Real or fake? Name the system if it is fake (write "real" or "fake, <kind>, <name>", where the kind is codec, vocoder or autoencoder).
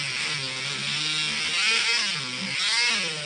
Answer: real